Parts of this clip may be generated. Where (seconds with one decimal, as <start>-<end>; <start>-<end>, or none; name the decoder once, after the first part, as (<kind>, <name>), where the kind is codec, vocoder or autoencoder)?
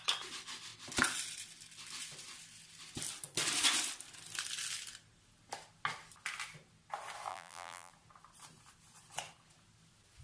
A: 7.3-7.9 (vocoder, BigVGAN v2)